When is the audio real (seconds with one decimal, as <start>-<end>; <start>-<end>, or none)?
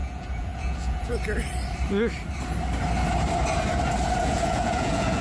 1.1-4.2